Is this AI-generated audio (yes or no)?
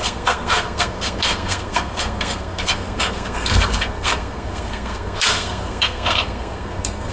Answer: yes